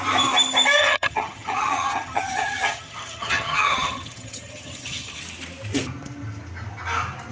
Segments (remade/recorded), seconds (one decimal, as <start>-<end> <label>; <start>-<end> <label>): 0.0-0.8 recorded; 0.8-5.2 remade; 5.2-7.3 recorded